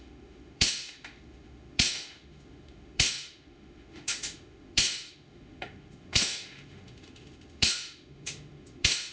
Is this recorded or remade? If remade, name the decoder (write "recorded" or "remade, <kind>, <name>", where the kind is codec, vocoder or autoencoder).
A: remade, autoencoder, DAC-VAE